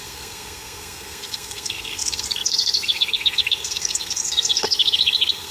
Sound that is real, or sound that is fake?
fake